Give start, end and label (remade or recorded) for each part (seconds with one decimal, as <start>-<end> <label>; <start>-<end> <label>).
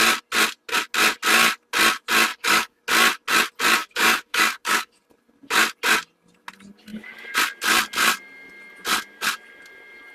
0.0-2.3 recorded; 2.3-2.8 remade; 2.8-3.8 recorded; 3.8-5.0 remade; 5.0-10.1 recorded